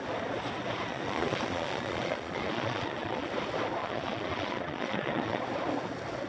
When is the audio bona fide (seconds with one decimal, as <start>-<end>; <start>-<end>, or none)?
0.0-0.9; 3.3-3.8; 5.4-6.3